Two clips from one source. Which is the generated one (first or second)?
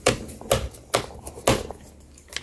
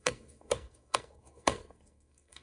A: second